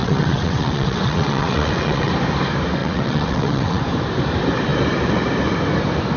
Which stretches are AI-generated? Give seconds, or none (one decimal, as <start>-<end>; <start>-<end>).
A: 0.0-2.1; 2.8-3.8